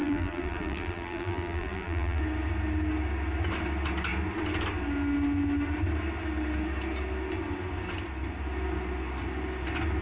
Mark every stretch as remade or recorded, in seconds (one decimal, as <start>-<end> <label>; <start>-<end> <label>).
0.0-2.2 remade; 2.2-10.0 recorded